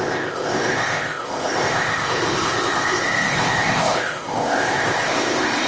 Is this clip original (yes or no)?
no